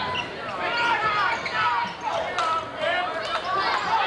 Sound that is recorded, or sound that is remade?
recorded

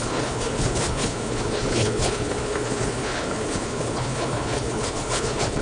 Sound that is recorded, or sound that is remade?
remade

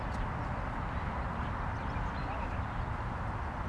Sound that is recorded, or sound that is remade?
recorded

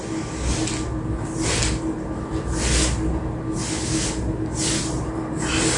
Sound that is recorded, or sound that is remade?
recorded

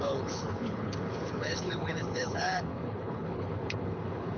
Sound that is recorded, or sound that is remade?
remade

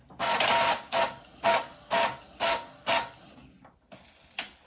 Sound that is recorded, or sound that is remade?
recorded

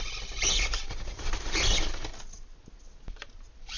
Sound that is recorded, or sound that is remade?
recorded